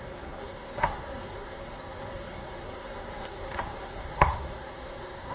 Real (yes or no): no